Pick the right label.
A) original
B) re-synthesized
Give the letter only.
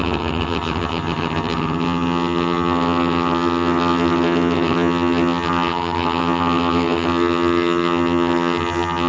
B